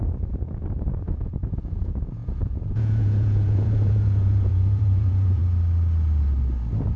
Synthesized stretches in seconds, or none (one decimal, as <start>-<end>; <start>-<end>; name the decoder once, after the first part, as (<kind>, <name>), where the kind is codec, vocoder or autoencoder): 0.0-5.4 (vocoder, Vocos)